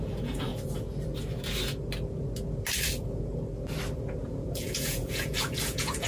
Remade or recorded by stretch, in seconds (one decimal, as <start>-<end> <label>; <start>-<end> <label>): 0.0-0.5 remade; 0.5-4.2 recorded; 4.2-6.1 remade